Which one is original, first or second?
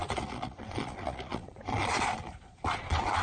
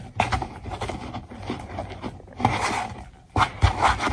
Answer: second